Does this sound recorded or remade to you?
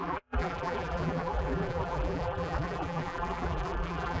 remade